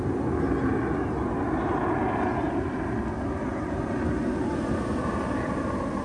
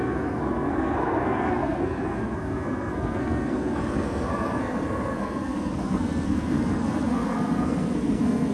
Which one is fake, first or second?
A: second